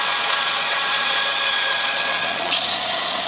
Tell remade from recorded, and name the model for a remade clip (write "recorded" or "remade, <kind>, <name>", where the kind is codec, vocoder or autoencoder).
remade, vocoder, Vocos